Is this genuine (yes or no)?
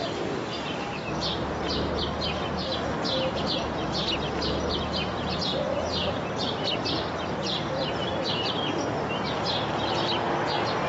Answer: yes